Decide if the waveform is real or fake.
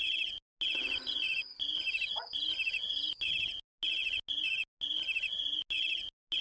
real